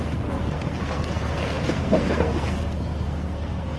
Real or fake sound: fake